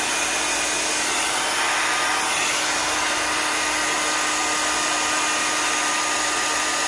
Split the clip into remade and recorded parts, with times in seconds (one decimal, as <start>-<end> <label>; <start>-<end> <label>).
0.0-6.9 recorded